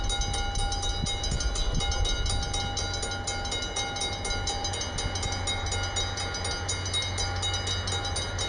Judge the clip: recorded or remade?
recorded